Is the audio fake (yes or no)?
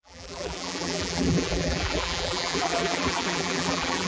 yes